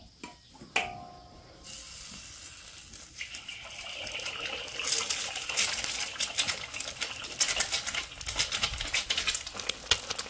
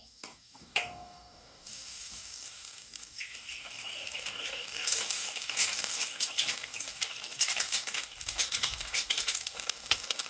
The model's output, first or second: second